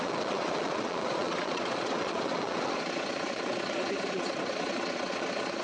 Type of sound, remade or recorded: remade